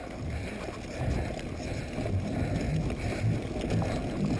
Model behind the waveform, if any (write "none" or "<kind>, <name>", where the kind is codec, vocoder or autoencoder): none